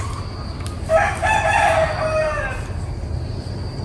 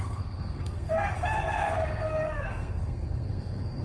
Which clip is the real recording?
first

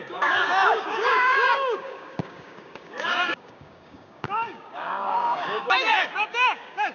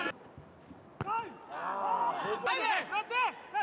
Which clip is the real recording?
second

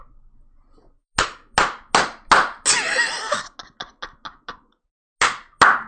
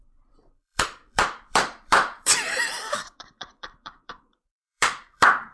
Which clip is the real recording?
first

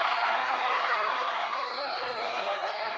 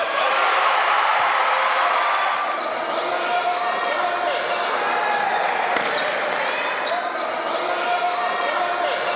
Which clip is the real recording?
second